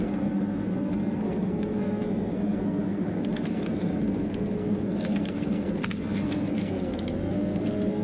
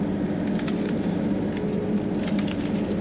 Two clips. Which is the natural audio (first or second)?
second